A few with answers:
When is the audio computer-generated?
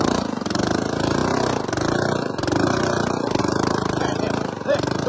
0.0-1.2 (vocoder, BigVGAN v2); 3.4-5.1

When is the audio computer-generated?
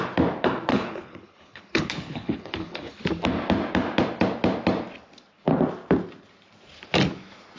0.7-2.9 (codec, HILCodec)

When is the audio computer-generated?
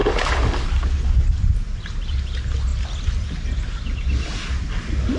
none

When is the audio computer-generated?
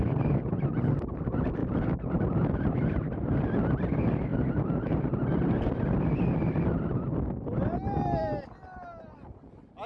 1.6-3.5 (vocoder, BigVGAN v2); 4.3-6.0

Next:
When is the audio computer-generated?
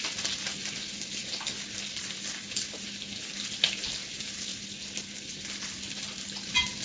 none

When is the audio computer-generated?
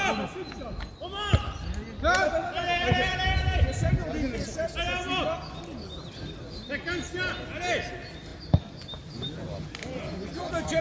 none